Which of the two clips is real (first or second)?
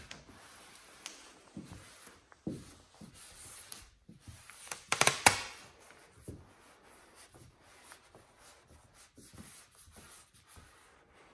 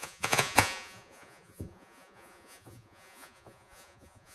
first